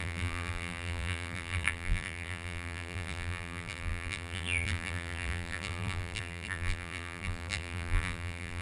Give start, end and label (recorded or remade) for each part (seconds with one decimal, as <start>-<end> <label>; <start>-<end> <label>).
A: 0.0-8.6 remade